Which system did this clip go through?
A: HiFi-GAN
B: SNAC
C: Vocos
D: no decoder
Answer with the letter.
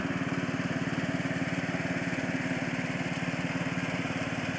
D